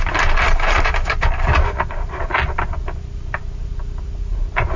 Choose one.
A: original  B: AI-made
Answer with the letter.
A